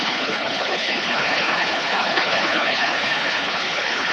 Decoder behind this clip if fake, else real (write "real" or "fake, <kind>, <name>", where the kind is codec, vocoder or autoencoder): fake, codec, HILCodec